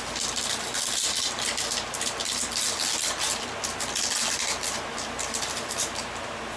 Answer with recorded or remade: recorded